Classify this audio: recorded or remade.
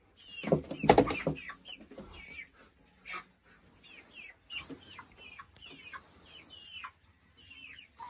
recorded